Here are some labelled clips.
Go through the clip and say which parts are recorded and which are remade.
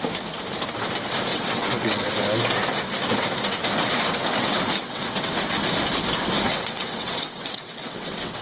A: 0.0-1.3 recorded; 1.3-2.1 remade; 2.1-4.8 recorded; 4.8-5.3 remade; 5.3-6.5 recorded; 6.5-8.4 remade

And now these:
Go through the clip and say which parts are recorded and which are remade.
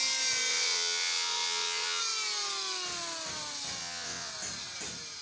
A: 0.0-0.5 recorded; 0.5-2.0 remade; 2.0-3.8 recorded; 3.8-4.3 remade; 4.3-5.2 recorded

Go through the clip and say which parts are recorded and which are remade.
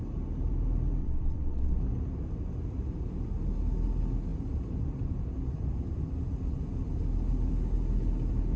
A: 0.0-1.0 recorded; 1.0-1.8 remade; 1.8-8.6 recorded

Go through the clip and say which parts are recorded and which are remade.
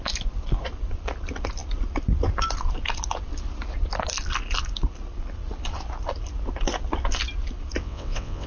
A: 0.0-7.8 recorded; 7.8-8.5 remade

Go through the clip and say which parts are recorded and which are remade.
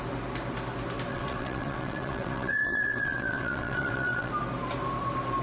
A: 0.0-1.1 recorded; 1.1-4.3 remade; 4.3-5.4 recorded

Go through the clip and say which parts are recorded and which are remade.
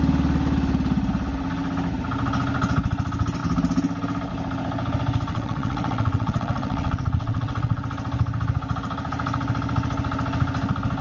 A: 0.0-5.3 recorded; 5.3-7.8 remade; 7.8-11.0 recorded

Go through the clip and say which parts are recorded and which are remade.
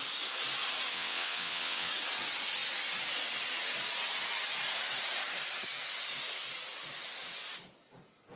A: 0.0-0.9 recorded; 0.9-1.9 remade; 1.9-8.4 recorded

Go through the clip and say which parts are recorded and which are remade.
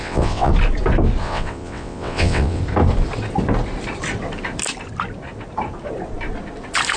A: 0.0-0.5 remade; 0.5-1.2 recorded; 1.2-2.6 remade; 2.6-7.0 recorded